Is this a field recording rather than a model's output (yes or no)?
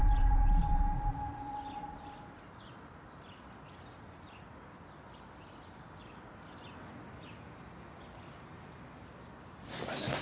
yes